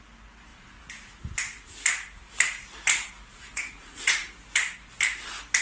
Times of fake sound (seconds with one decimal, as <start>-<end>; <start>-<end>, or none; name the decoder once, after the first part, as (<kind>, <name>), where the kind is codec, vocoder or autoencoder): 0.5-1.2 (vocoder, Vocos); 3.3-4.4